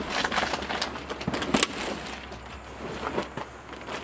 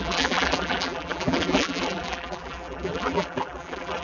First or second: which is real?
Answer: first